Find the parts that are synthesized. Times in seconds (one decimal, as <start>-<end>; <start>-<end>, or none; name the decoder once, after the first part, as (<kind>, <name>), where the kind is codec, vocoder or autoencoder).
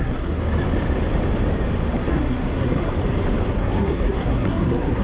0.0-0.4 (codec, SNAC); 1.9-2.9; 3.5-5.0